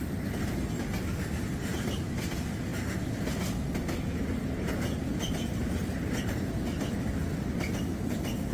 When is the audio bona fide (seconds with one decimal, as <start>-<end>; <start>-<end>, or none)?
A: 0.0-8.5